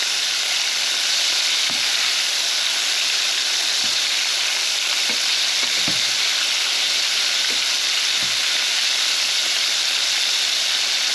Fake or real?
real